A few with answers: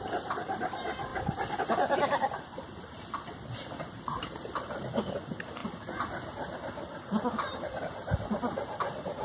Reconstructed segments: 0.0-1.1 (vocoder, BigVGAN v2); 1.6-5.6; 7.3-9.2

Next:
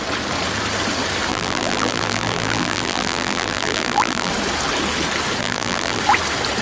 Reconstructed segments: 1.3-4.3 (vocoder, BigVGAN v2); 5.4-6.0

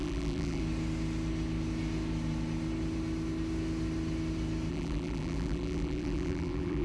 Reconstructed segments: 0.0-0.6 (vocoder, BigVGAN v2); 4.7-6.8

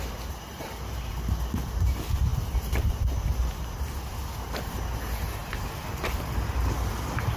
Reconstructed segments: 0.0-5.4 (vocoder, BigVGAN v2); 5.9-7.4

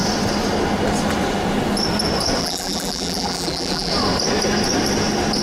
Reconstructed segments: 2.4-3.9 (vocoder, BigVGAN v2)

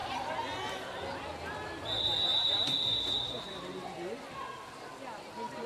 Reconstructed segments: none

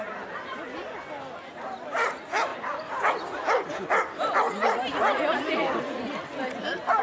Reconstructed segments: none